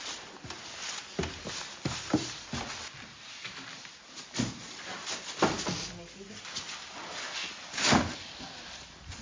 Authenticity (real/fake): real